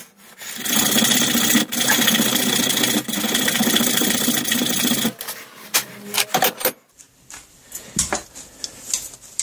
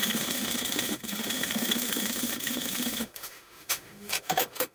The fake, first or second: second